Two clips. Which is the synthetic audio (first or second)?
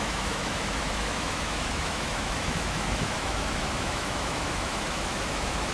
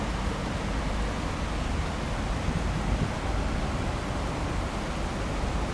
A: first